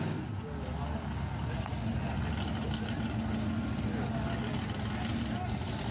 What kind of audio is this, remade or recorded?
recorded